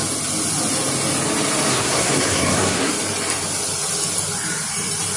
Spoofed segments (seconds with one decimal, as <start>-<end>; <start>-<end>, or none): 1.7-2.9